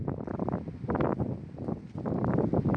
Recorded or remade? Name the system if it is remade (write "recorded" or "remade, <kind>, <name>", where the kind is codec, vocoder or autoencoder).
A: recorded